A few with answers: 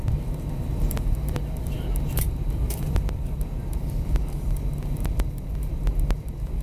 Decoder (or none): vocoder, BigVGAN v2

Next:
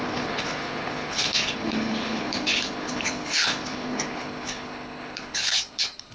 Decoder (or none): codec, HILCodec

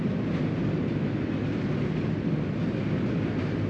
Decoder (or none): none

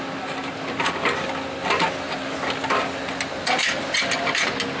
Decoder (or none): none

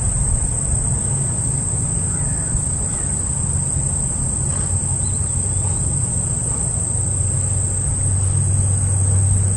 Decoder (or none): none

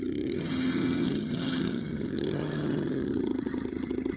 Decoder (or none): vocoder, HiFi-GAN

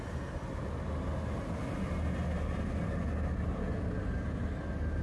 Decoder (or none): none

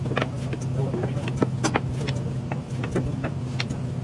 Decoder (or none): none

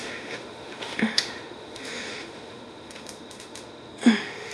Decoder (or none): autoencoder, DAC-VAE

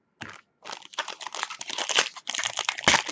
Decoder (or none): none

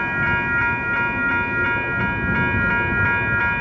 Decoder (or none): none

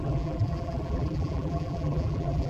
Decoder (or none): vocoder, BigVGAN v2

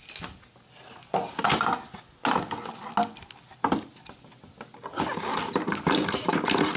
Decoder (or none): none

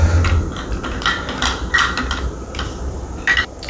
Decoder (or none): none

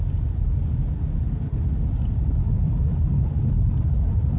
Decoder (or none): none